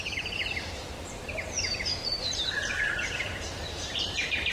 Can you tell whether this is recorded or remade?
remade